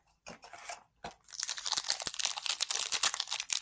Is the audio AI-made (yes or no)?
no